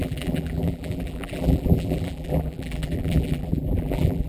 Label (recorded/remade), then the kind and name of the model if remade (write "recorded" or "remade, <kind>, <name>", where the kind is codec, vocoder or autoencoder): remade, vocoder, BigVGAN v2